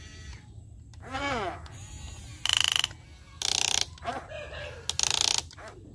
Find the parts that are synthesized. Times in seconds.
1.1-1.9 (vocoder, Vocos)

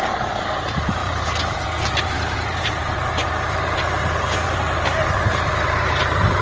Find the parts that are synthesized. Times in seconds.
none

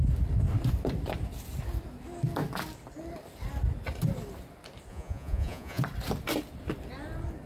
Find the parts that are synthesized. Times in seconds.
4.9-5.8 (vocoder, Vocos)

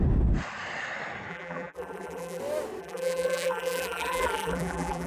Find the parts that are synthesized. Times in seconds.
1.3-2.4 (vocoder, BigVGAN v2); 2.8-5.1

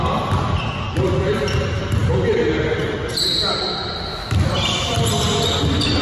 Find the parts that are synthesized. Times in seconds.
none

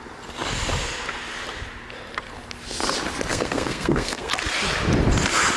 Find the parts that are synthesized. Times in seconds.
3.3-4.3 (codec, SNAC)

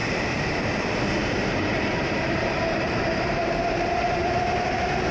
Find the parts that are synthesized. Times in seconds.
0.0-0.6 (vocoder, BigVGAN v2); 1.2-4.3

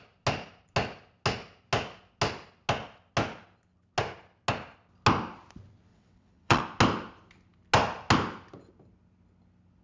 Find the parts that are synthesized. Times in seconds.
5.9-6.6 (vocoder, WaveNeXt)